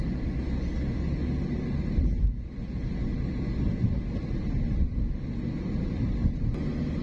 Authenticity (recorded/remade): recorded